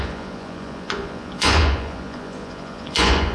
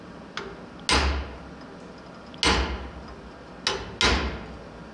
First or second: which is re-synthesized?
first